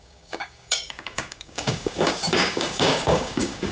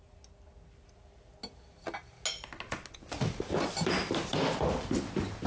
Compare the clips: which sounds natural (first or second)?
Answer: second